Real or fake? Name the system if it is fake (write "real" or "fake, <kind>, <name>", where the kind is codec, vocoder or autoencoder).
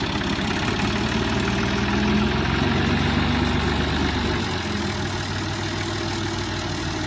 real